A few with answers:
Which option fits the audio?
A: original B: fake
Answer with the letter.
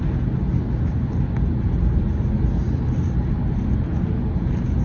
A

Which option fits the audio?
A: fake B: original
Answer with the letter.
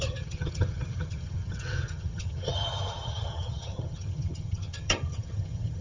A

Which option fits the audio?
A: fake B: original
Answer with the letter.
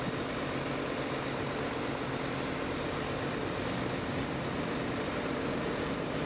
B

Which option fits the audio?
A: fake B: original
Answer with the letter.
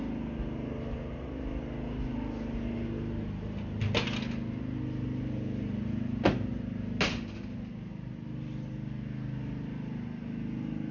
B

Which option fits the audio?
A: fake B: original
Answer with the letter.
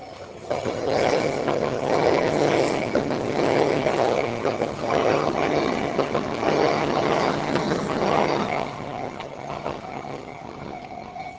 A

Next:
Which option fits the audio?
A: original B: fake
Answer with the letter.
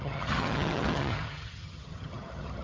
B